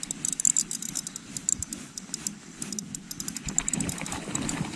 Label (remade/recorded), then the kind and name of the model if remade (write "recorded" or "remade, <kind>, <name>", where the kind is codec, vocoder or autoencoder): recorded